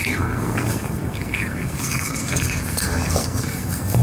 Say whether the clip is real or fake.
fake